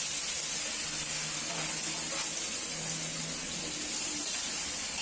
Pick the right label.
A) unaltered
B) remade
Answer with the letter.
A